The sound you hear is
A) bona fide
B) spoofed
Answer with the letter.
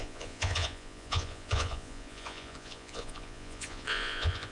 B